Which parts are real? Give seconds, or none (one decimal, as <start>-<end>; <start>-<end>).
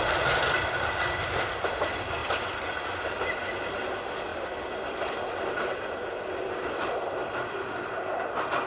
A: 0.0-8.7